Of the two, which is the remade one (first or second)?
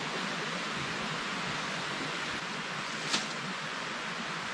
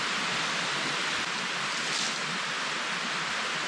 first